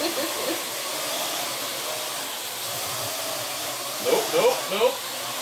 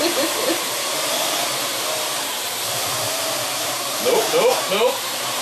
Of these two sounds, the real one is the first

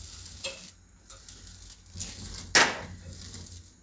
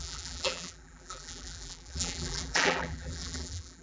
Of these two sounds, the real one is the first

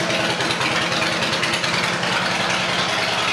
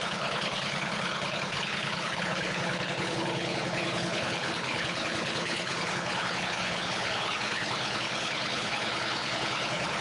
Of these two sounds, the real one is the first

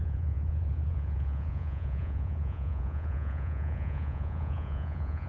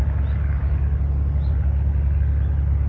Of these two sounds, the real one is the second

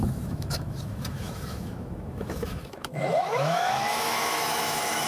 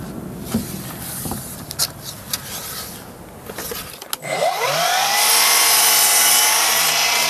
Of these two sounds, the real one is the second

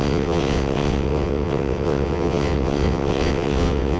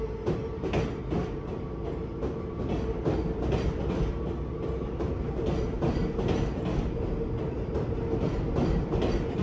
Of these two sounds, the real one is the second